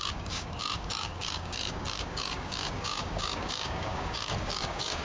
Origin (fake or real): fake